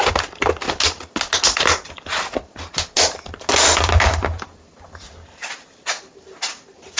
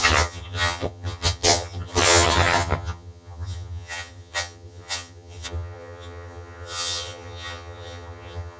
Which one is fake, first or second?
second